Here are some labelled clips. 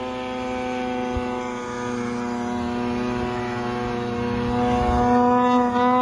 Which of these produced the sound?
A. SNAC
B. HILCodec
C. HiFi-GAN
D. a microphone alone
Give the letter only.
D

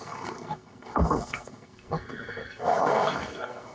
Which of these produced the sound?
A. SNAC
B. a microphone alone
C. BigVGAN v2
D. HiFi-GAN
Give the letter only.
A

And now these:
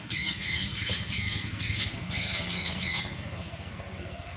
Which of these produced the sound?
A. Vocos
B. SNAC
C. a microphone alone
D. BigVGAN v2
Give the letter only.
B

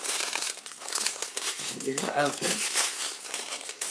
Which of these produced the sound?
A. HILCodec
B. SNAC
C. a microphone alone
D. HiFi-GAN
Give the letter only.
B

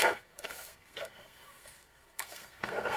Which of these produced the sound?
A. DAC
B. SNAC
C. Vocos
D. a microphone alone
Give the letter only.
B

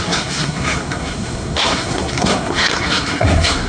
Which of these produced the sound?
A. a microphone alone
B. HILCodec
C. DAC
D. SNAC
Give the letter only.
D